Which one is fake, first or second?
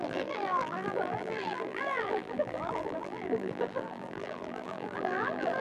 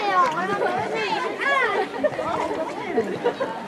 first